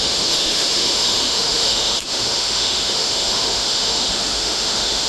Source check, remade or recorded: remade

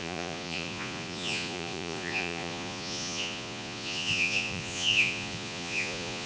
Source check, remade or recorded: remade